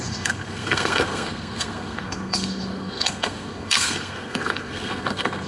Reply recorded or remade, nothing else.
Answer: remade